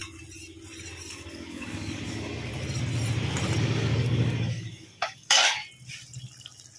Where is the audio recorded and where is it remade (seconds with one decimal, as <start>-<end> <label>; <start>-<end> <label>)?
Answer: 0.0-1.1 recorded; 1.1-2.5 remade; 2.5-3.6 recorded; 3.6-5.6 remade; 5.6-6.8 recorded